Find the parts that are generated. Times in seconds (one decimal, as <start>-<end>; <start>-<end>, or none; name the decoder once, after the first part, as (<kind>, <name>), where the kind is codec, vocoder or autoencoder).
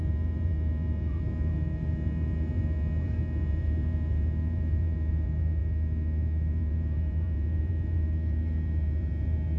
0.0-5.6 (vocoder, Vocos); 6.5-9.6